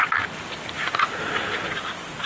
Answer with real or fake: real